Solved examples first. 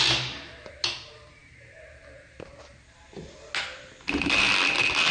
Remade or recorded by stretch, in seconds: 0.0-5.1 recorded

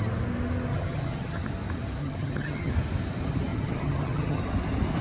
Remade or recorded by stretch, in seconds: 0.0-0.7 recorded; 0.7-1.5 remade; 1.5-2.0 recorded; 2.0-2.7 remade; 2.7-3.5 recorded; 3.5-4.4 remade; 4.4-5.0 recorded

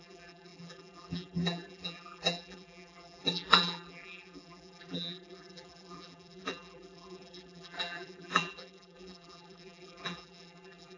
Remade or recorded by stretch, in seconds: 0.0-11.0 remade

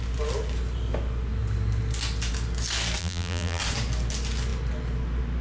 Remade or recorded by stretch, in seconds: 0.0-3.0 recorded; 3.0-3.6 remade; 3.6-5.4 recorded

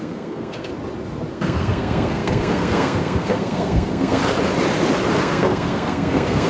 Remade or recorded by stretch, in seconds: 0.0-0.7 remade; 0.7-1.3 recorded; 1.3-4.2 remade; 4.2-5.2 recorded; 5.2-6.5 remade

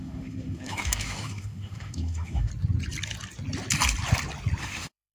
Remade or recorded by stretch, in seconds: 0.0-2.5 remade; 2.5-4.6 recorded; 4.6-5.1 remade

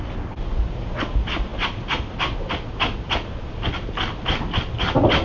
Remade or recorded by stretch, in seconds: 0.0-5.2 recorded